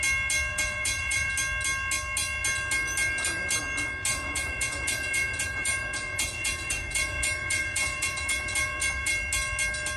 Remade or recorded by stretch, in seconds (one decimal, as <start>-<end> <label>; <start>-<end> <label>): 0.0-0.5 recorded; 0.5-1.3 remade; 1.3-4.1 recorded; 4.1-9.1 remade; 9.1-10.0 recorded